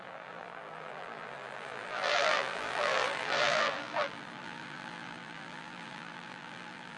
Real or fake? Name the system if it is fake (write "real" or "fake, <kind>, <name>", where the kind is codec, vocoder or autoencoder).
fake, vocoder, BigVGAN v2